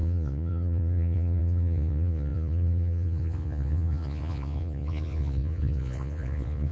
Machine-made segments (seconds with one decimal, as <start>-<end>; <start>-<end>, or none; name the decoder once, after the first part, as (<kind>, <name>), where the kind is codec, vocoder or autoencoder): 0.0-6.7 (vocoder, Vocos)